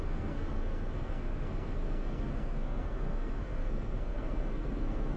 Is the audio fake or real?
fake